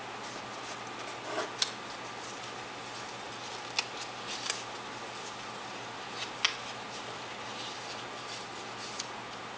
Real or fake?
real